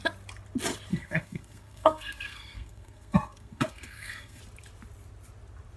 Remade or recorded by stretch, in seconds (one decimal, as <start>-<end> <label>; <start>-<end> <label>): 0.0-0.9 recorded; 0.9-4.4 remade; 4.4-5.8 recorded